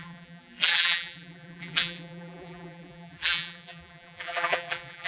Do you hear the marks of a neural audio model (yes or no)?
yes